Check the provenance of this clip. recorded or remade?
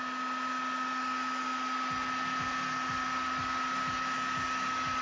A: recorded